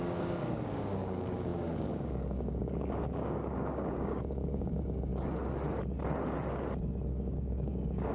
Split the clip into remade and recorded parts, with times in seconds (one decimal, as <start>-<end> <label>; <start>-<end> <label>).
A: 0.0-5.1 remade; 5.1-7.1 recorded; 7.1-8.1 remade

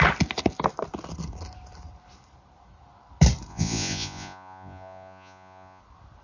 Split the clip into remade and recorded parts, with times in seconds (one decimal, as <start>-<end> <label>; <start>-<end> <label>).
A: 0.0-3.5 recorded; 3.5-5.8 remade; 5.8-6.2 recorded

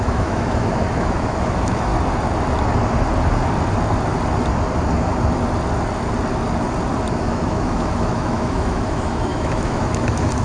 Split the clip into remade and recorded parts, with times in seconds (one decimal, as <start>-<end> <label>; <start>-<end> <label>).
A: 0.0-1.9 remade; 1.9-7.1 recorded; 7.1-10.4 remade

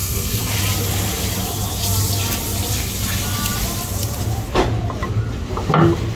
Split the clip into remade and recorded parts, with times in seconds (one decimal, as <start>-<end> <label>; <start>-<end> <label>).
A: 0.0-0.5 remade; 0.5-6.2 recorded

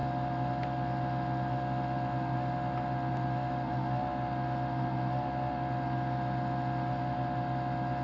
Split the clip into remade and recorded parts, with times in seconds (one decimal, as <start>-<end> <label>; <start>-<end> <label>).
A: 0.0-8.0 recorded

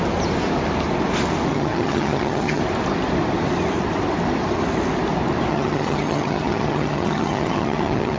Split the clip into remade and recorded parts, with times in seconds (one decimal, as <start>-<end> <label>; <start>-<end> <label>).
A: 0.0-1.5 recorded; 1.5-2.6 remade; 2.6-5.5 recorded; 5.5-8.2 remade